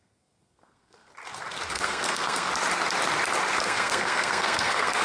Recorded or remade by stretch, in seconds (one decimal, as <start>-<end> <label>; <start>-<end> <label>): 0.0-1.1 remade; 1.1-1.7 recorded; 1.7-2.5 remade; 2.5-3.6 recorded; 3.6-5.0 remade